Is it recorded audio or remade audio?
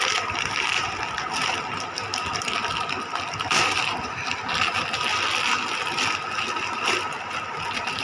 recorded